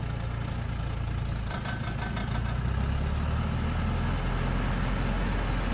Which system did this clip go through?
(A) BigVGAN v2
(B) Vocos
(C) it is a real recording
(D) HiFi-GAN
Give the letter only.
C